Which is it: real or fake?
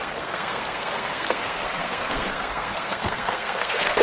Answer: fake